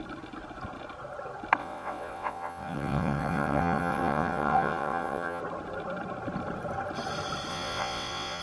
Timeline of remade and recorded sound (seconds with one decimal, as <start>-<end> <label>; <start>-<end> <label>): 0.0-1.6 recorded; 1.6-5.4 remade; 5.4-7.5 recorded; 7.5-8.4 remade